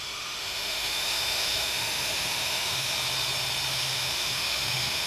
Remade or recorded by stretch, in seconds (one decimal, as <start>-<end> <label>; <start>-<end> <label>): 0.0-2.9 remade; 2.9-3.7 recorded; 3.7-5.1 remade